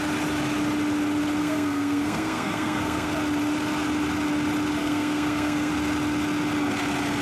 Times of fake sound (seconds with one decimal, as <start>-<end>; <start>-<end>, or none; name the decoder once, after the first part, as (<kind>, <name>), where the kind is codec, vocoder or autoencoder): 1.4-3.1 (codec, SNAC); 4.8-5.7